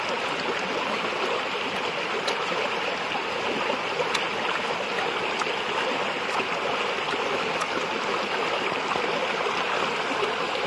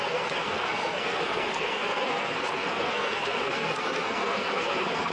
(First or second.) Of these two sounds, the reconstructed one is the second